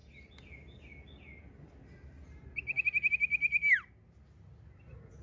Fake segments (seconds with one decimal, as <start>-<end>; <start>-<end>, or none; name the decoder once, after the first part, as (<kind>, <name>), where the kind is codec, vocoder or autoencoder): none